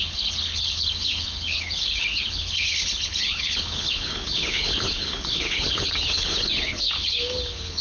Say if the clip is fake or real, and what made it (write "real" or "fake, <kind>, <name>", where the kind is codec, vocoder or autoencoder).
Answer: fake, codec, HILCodec